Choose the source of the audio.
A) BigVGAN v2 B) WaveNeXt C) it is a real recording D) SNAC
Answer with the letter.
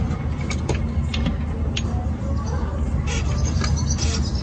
C